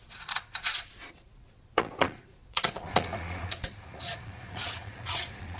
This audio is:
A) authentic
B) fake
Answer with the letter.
B